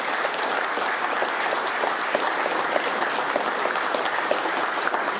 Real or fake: real